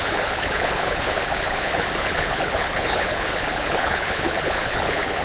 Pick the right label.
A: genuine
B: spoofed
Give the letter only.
B